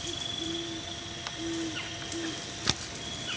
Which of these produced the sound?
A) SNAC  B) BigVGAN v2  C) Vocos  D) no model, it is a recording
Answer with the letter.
D